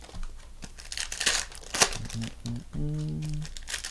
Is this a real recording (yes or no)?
yes